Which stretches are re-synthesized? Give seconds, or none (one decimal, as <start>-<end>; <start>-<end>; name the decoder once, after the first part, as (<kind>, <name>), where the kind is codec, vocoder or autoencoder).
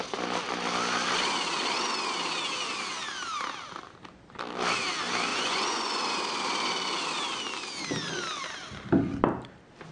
5.3-6.0 (vocoder, Vocos)